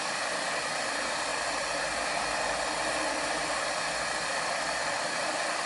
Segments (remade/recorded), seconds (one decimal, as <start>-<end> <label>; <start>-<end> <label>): 0.0-5.7 recorded